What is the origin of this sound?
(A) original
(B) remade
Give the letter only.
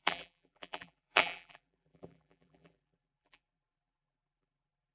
B